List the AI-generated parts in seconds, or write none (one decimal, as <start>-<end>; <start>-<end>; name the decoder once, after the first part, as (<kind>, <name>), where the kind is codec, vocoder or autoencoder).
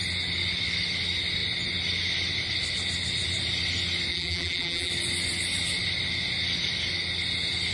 4.1-4.9 (vocoder, BigVGAN v2)